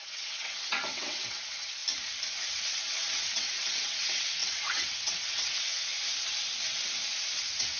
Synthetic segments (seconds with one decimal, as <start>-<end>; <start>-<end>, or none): 0.0-1.8; 2.5-5.9; 7.3-7.8